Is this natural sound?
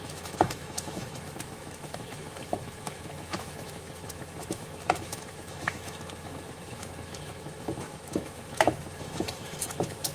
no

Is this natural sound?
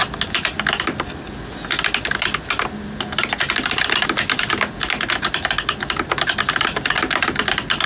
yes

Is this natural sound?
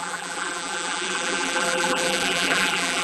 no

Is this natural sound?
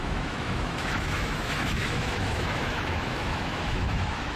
no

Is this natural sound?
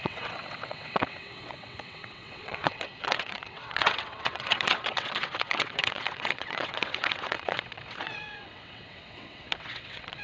no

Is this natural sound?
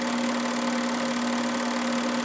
yes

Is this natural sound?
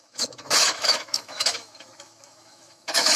no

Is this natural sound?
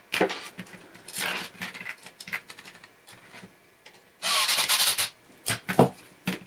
yes